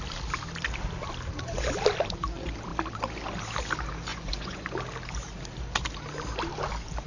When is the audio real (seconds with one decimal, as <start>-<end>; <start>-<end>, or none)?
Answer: 0.0-4.1; 4.7-7.1

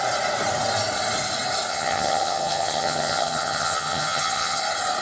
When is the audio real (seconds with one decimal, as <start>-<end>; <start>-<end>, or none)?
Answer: 0.0-1.7; 4.6-5.0

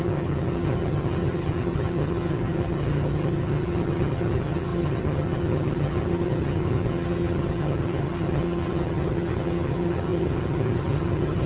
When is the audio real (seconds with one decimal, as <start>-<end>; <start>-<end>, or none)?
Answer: none

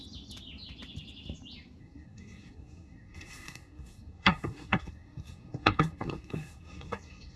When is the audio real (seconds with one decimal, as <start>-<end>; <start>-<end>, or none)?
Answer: 0.0-1.8

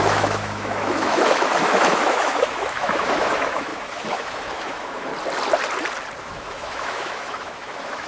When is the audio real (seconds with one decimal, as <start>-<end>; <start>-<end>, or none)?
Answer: 5.1-6.2

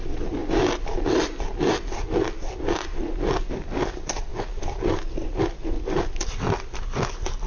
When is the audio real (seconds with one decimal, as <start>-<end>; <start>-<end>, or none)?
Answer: 0.0-7.5

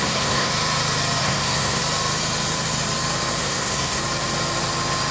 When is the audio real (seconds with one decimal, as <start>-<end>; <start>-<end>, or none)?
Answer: 0.5-1.2; 1.8-3.4; 4.0-5.1